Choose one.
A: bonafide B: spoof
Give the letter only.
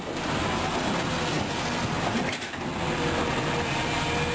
A